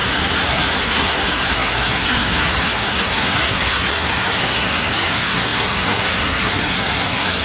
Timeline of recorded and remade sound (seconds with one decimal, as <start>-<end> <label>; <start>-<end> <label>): 0.0-7.4 remade